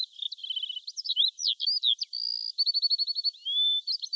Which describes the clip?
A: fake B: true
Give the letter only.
B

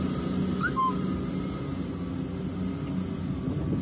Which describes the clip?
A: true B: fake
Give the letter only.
A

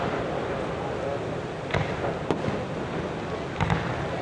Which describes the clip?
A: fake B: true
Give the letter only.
B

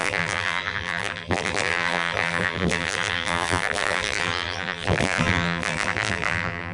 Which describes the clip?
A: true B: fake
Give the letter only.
B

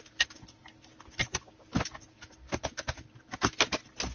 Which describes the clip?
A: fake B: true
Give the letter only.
B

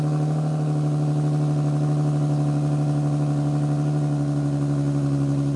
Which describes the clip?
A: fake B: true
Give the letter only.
B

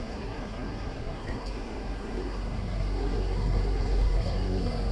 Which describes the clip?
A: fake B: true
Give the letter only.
A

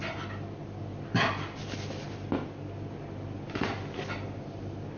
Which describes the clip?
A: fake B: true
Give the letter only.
B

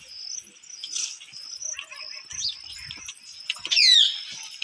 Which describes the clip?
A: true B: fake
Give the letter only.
A